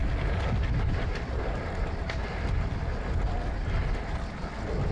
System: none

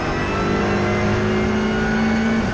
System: none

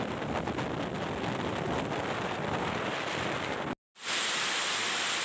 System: none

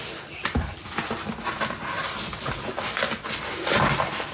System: none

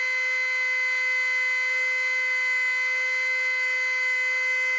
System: none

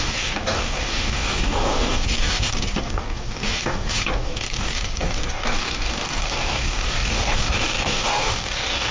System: codec, DAC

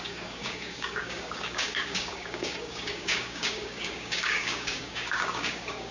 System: codec, DAC